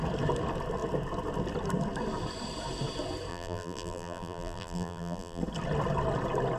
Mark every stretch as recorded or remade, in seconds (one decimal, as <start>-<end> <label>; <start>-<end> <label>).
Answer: 0.0-3.3 recorded; 3.3-5.4 remade; 5.4-6.6 recorded